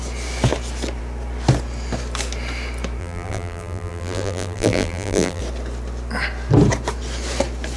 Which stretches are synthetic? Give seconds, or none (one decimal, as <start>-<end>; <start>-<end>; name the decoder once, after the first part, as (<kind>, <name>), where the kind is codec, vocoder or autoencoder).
3.0-5.4 (vocoder, BigVGAN v2)